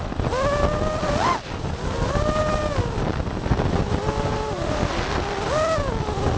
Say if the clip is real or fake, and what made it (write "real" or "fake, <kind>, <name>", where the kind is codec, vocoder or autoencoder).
real